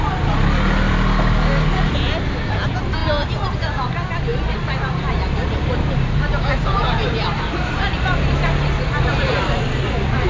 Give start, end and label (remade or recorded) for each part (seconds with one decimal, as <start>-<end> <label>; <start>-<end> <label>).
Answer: 0.0-10.3 recorded